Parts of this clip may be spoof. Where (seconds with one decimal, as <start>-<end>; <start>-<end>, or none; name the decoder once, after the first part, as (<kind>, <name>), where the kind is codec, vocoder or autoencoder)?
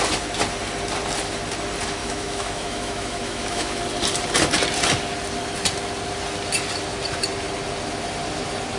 2.0-3.8 (autoencoder, DAC-VAE)